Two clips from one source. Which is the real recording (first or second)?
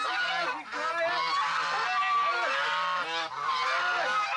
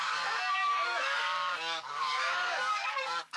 first